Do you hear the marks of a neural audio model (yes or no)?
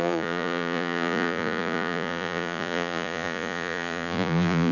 yes